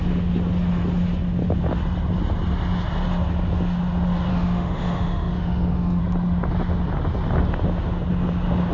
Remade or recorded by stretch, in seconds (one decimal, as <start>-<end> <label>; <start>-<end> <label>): 0.0-4.3 recorded; 4.3-6.0 remade; 6.0-8.7 recorded